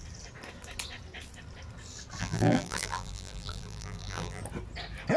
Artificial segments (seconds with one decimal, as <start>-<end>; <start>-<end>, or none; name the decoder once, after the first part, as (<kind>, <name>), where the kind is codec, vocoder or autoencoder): 2.2-4.4 (vocoder, BigVGAN v2)